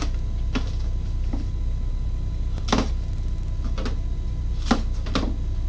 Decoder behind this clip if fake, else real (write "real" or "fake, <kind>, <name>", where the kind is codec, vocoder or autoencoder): real